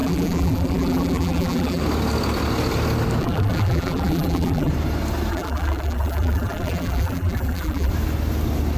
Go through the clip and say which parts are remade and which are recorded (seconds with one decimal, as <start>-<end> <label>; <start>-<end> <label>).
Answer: 0.0-1.8 remade; 1.8-3.2 recorded; 3.2-4.7 remade; 4.7-5.3 recorded; 5.3-7.9 remade; 7.9-8.8 recorded